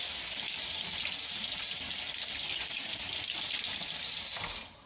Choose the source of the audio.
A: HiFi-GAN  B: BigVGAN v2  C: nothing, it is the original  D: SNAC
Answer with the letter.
C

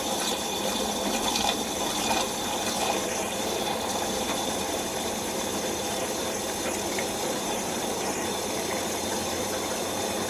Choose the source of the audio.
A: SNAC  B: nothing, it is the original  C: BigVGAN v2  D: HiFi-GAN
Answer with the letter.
C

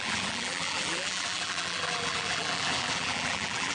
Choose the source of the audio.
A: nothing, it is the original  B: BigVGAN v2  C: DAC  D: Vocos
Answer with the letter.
B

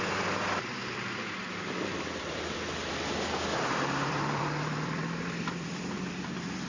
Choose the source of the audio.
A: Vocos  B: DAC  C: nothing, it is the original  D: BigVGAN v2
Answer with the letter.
D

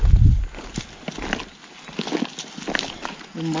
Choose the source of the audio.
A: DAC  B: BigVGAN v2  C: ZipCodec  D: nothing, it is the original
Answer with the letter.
D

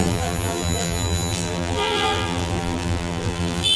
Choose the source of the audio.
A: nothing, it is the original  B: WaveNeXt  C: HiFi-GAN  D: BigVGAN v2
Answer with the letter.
D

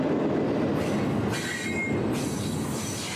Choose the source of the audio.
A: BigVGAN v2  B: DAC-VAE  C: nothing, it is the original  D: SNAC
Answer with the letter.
C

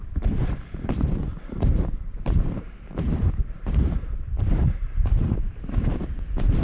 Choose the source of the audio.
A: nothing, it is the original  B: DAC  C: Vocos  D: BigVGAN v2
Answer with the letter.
D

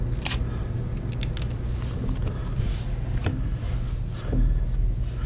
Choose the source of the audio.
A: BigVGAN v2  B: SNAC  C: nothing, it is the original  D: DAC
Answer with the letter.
C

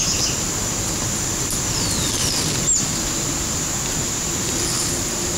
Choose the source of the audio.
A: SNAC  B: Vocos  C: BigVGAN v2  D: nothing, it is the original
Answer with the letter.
D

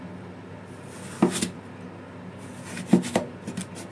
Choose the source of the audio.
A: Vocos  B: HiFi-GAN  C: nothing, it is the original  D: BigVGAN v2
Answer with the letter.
C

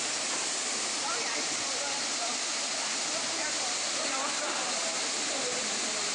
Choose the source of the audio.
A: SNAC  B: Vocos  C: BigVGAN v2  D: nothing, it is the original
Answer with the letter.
C